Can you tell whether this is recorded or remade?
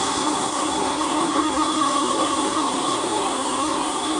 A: remade